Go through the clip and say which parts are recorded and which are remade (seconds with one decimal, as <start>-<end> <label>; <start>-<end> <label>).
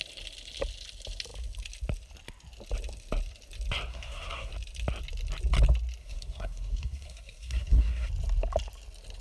0.0-3.9 recorded; 3.9-4.5 remade; 4.5-6.0 recorded; 6.0-8.1 remade; 8.1-9.2 recorded